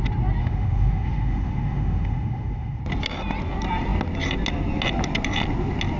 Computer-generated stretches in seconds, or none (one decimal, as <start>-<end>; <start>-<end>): 0.4-2.8